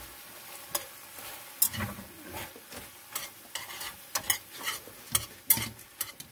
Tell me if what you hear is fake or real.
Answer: real